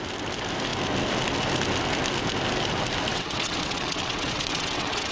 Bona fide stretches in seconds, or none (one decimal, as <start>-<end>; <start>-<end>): 0.0-3.1